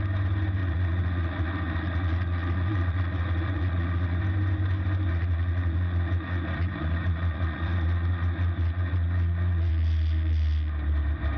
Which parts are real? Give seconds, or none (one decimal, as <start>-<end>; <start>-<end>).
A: 0.0-0.6; 4.2-5.1; 9.7-11.4